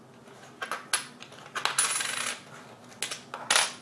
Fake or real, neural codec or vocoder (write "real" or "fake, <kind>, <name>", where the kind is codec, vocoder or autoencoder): real